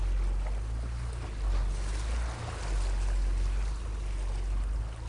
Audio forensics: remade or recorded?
recorded